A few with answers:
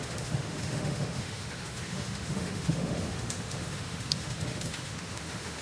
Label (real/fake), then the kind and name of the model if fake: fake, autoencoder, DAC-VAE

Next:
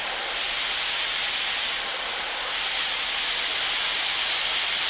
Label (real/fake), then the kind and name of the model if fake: real